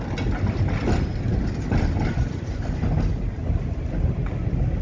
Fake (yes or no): no